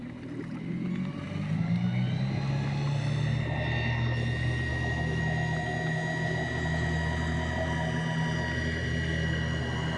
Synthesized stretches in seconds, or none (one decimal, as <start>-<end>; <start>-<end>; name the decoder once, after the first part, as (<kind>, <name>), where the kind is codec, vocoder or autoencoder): 4.7-5.2 (autoencoder, DAC-VAE)